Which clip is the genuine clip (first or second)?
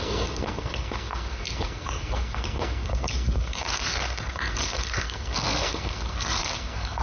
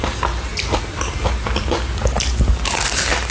second